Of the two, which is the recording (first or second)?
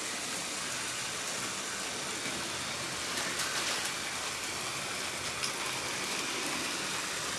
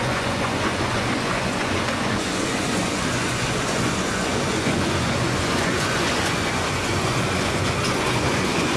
first